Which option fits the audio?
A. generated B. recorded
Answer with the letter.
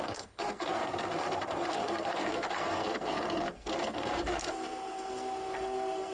A